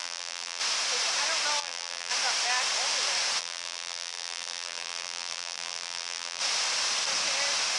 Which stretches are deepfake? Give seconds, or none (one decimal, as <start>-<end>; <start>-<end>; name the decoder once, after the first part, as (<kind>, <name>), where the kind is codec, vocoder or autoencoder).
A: 0.0-0.6 (vocoder, BigVGAN v2); 1.6-2.1; 3.4-6.4